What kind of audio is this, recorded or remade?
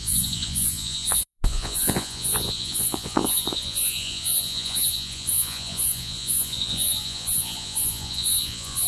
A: remade